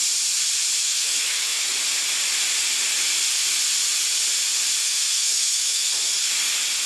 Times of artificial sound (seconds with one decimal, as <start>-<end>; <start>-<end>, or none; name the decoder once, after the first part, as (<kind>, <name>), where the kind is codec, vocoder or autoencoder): 0.8-1.7 (autoencoder, DAC-VAE); 4.8-5.9